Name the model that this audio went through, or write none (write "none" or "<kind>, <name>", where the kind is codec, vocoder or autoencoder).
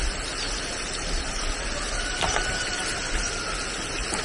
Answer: none